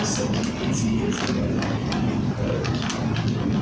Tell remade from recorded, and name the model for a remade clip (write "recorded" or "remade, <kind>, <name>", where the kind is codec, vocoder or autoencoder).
recorded